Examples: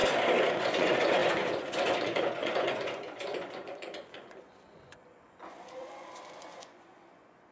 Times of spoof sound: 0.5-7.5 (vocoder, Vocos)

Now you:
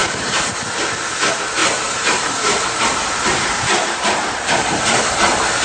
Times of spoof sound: 0.0-0.7 (vocoder, BigVGAN v2); 1.6-5.0

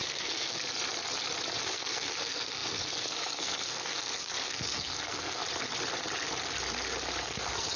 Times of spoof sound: 0.0-0.6 (codec, SNAC); 1.6-5.4; 7.2-7.8

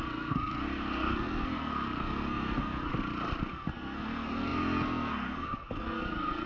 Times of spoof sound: 0.0-2.9 (codec, SNAC); 3.5-6.5

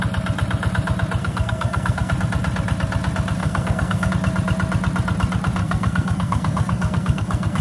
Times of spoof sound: 1.2-2.1 (codec, SNAC); 3.4-4.1; 5.6-7.6

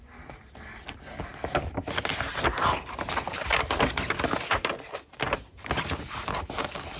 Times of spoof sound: none

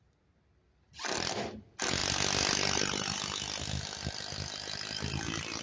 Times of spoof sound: none